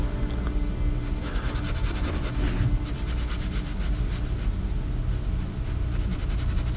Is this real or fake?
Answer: real